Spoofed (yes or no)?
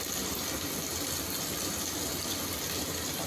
no